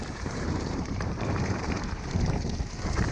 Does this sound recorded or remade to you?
remade